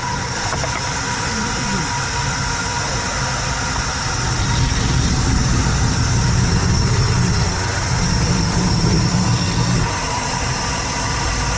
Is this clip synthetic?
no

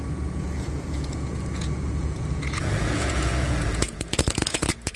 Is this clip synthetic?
yes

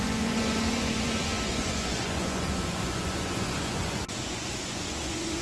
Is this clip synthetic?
yes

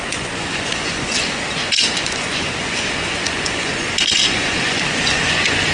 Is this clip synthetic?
yes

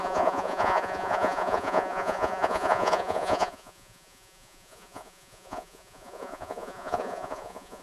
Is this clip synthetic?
yes